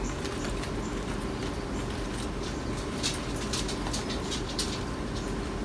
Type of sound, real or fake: real